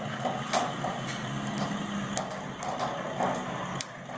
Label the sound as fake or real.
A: real